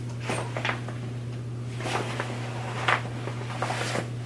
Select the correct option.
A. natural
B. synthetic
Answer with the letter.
A